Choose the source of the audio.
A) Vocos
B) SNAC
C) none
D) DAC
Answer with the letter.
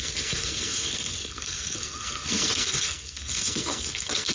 B